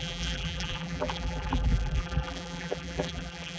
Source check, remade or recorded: remade